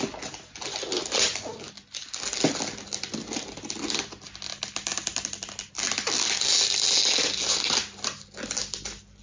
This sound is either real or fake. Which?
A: real